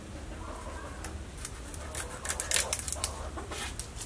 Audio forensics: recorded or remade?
recorded